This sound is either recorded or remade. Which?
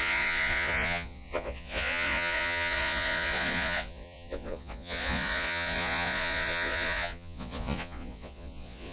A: remade